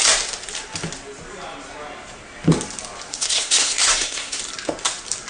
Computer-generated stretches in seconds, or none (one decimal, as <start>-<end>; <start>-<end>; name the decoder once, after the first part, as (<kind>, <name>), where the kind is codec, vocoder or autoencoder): 3.1-4.4 (codec, SNAC)